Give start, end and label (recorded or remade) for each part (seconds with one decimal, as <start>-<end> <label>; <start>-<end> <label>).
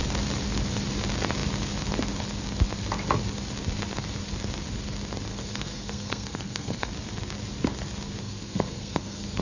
0.0-5.3 recorded; 5.3-6.9 remade; 6.9-8.2 recorded; 8.2-9.4 remade